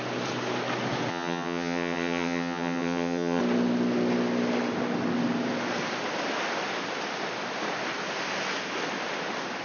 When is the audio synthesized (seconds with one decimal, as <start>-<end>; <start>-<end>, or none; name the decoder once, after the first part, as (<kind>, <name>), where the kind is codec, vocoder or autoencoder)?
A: 1.1-3.4 (vocoder, HiFi-GAN)